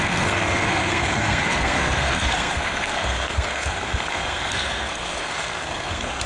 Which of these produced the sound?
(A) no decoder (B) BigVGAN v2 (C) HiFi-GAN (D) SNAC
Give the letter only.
D